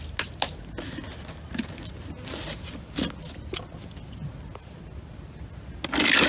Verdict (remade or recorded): recorded